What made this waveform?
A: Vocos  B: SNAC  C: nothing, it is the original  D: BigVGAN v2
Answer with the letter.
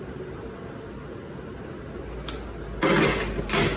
C